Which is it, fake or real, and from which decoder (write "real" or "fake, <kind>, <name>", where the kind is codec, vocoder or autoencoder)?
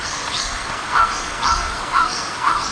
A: fake, codec, SNAC